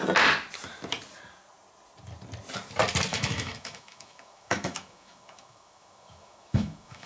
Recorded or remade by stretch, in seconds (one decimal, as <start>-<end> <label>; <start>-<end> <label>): 0.0-3.1 recorded; 3.1-7.1 remade